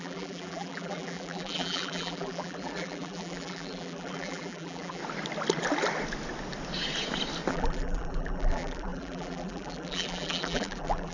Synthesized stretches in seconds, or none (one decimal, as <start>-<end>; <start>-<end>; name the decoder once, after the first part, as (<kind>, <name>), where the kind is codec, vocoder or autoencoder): 0.0-5.0 (vocoder, BigVGAN v2); 7.5-11.1